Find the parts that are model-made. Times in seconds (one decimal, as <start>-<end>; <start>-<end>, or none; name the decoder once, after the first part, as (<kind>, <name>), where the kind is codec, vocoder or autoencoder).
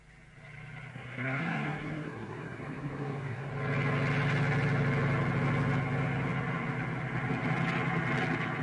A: 0.9-3.5 (codec, SNAC)